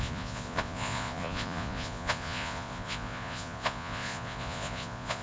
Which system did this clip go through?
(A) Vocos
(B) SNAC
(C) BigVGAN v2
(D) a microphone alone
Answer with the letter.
A